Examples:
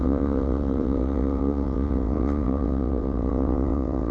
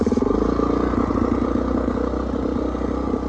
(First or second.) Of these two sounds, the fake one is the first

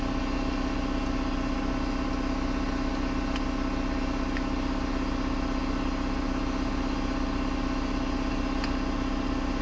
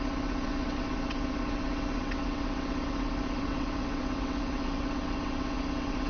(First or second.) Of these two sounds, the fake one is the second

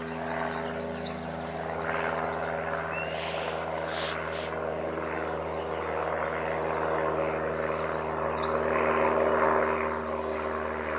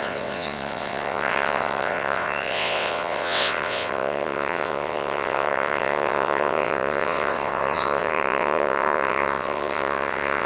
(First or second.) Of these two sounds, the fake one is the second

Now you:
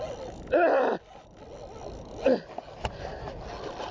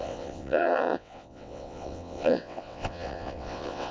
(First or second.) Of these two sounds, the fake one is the second